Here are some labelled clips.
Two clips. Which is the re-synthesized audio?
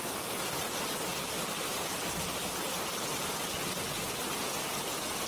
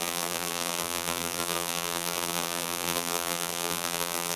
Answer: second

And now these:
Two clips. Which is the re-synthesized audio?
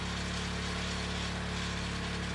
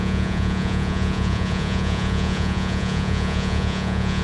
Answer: second